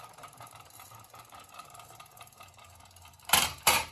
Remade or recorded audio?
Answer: remade